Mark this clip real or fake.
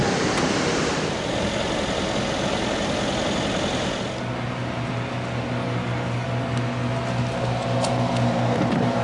real